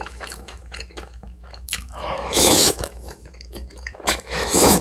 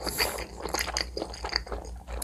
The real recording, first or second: second